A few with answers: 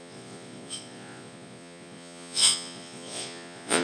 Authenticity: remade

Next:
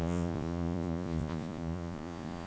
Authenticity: remade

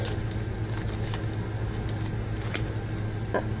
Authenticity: recorded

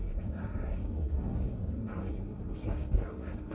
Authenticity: remade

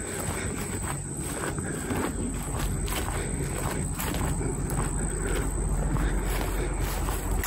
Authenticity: recorded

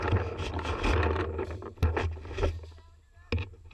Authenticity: recorded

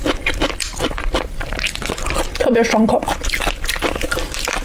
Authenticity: remade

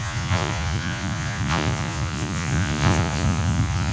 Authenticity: remade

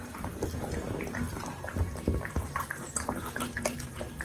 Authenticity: remade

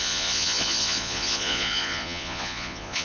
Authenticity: remade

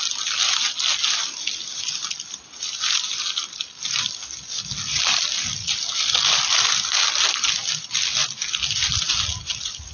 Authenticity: recorded